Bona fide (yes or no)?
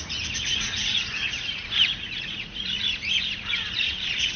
no